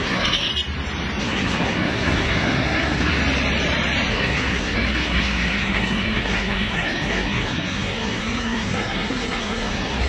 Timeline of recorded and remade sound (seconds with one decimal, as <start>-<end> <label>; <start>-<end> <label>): 0.0-0.5 remade; 0.5-1.2 recorded; 1.2-3.2 remade; 3.2-4.1 recorded; 4.1-10.1 remade

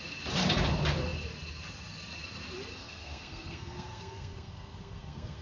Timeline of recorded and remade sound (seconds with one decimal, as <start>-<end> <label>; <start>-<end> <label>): 0.0-2.7 recorded; 2.7-5.4 remade

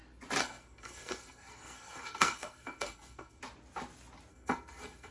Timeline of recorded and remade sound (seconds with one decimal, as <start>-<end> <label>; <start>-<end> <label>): 0.0-0.4 recorded; 0.4-3.4 remade; 3.4-4.3 recorded; 4.3-5.1 remade

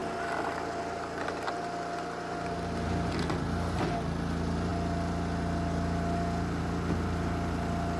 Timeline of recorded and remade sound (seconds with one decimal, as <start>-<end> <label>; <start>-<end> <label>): 0.0-8.0 recorded

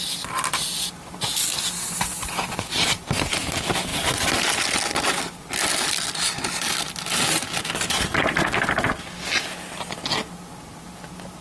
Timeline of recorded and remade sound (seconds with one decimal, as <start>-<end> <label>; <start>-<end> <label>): 0.0-11.4 recorded

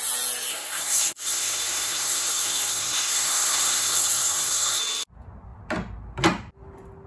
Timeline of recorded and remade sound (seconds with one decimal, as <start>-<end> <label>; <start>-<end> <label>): 0.0-0.5 recorded; 0.5-4.8 remade; 4.8-7.1 recorded